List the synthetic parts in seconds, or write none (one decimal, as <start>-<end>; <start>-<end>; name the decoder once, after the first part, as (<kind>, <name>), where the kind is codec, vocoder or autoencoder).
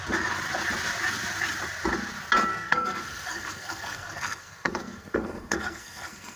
2.5-6.4 (codec, SNAC)